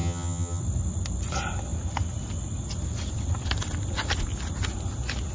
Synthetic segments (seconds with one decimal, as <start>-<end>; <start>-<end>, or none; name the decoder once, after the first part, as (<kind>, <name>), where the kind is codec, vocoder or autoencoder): 0.0-0.6 (vocoder, HiFi-GAN)